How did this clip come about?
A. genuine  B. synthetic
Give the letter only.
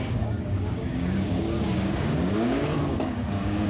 B